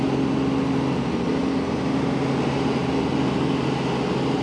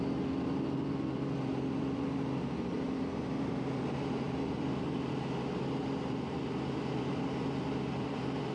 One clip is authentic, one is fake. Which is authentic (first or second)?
first